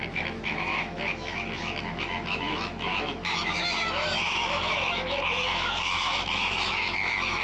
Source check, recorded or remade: remade